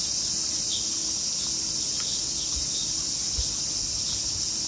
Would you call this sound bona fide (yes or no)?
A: yes